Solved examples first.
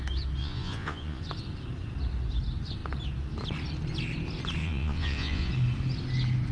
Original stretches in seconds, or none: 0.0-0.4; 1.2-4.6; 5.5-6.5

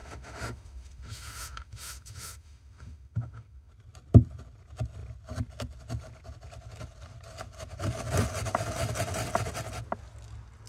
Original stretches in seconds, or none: 3.7-10.7

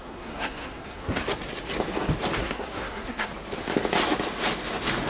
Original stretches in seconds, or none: 1.2-2.4; 3.3-5.1

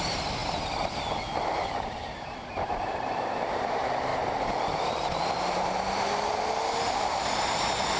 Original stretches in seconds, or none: 0.4-2.0; 4.1-7.0

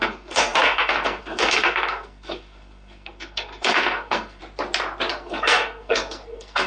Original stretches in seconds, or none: 4.4-5.1

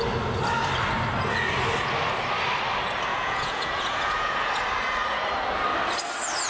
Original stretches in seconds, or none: 0.0-3.1; 4.5-6.5

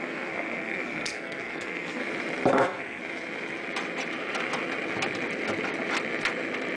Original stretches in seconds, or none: 2.0-2.5; 3.0-6.8